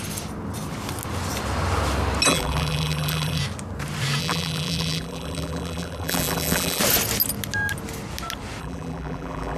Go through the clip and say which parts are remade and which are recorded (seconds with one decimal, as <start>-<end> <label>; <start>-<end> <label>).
0.0-2.3 recorded; 2.3-3.4 remade; 3.4-4.2 recorded; 4.2-6.8 remade; 6.8-8.6 recorded; 8.6-9.6 remade